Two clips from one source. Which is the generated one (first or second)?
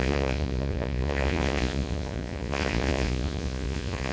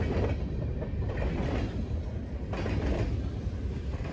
first